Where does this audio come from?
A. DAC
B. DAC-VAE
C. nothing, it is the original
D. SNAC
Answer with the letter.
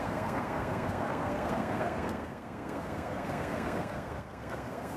D